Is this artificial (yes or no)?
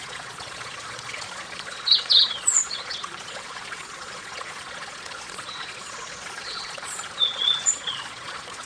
yes